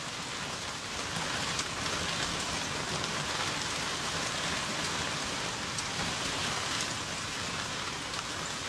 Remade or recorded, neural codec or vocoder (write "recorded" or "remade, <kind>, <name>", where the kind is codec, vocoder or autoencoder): recorded